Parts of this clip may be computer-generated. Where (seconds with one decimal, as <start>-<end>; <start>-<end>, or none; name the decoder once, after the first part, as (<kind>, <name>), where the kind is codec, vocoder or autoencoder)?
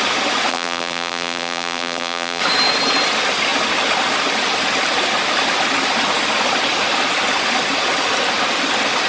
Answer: 0.5-2.4 (vocoder, BigVGAN v2)